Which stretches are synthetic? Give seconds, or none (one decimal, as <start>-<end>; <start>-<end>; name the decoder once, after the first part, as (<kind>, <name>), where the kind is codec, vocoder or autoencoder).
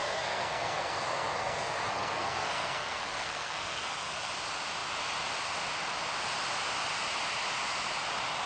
0.0-4.3 (codec, SNAC)